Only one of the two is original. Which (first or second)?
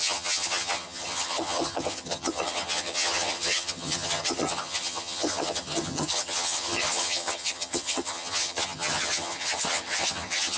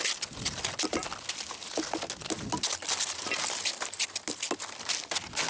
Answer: second